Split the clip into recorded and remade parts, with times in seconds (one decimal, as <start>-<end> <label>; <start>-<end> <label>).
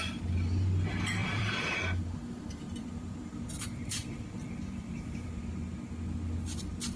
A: 0.0-1.2 recorded; 1.2-5.4 remade; 5.4-7.0 recorded